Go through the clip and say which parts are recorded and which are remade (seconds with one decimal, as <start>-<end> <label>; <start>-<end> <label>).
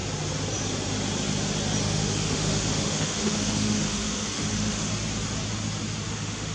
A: 0.0-1.8 recorded; 1.8-4.9 remade; 4.9-6.1 recorded; 6.1-6.5 remade